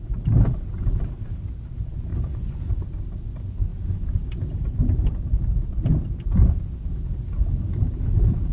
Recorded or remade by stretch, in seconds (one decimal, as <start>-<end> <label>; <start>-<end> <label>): 0.0-2.1 recorded; 2.1-2.7 remade; 2.7-8.5 recorded